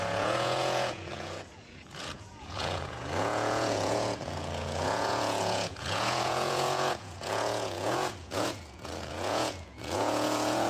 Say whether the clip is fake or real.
fake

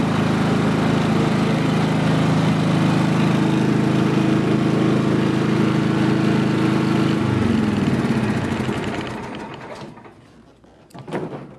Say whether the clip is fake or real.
real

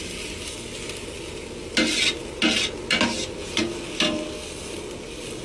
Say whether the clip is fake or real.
real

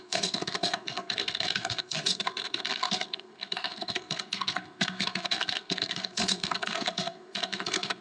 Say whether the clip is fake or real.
fake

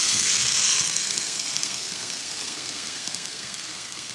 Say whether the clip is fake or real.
fake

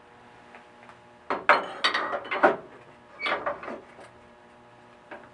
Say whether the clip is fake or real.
real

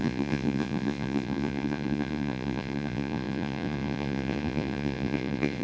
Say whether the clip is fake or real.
fake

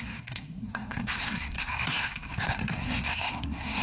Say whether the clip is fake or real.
fake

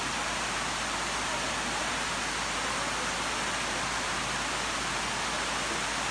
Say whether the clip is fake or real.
real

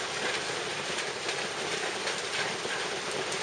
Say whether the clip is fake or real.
real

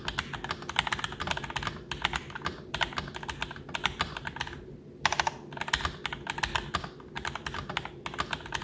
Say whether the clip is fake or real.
real